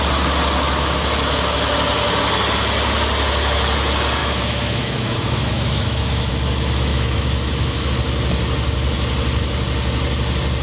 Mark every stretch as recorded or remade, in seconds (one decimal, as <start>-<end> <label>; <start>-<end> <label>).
0.0-4.2 recorded; 4.2-6.3 remade; 6.3-6.9 recorded; 6.9-7.9 remade; 7.9-10.6 recorded